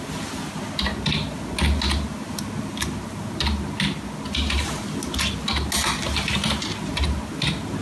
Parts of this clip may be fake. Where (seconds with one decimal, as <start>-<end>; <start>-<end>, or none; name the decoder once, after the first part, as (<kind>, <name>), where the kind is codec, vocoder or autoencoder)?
none